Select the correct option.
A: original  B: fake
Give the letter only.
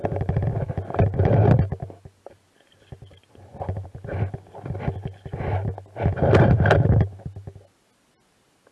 A